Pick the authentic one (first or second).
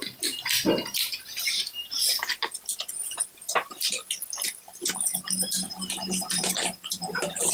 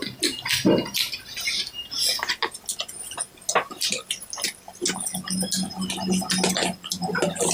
second